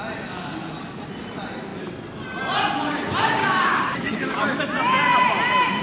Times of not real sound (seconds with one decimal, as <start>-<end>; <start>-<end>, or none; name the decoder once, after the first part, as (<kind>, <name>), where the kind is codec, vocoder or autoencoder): 3.4-4.6 (codec, DAC)